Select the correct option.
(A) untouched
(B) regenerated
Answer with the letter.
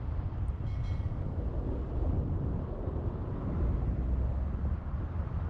A